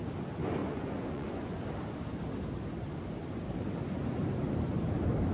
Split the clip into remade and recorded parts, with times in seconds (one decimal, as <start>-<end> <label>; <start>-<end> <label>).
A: 0.0-0.6 recorded; 0.6-1.6 remade; 1.6-5.3 recorded